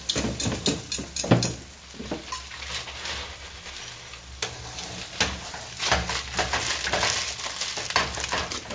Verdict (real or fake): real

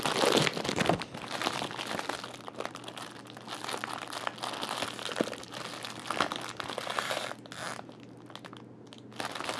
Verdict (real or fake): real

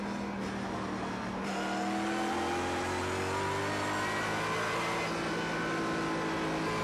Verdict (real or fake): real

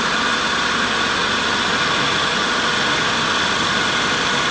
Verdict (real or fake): real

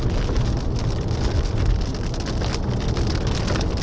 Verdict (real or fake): real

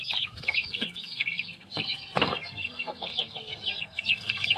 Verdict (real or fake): fake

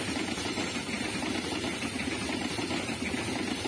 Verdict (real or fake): real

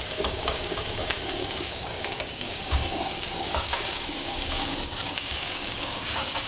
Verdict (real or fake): fake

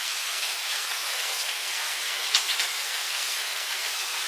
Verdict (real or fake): fake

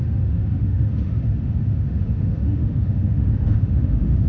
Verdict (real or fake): fake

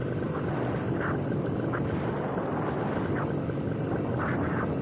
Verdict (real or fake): real